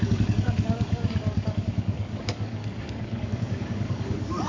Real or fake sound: fake